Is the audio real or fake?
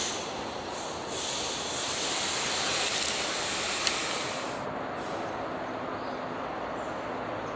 real